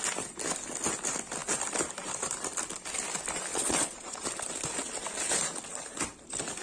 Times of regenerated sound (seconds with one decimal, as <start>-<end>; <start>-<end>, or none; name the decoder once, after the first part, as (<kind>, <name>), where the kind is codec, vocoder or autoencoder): 3.5-4.2 (vocoder, Vocos)